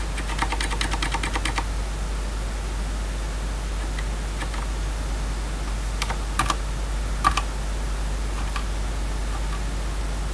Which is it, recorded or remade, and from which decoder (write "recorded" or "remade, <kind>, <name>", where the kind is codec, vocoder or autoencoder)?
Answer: recorded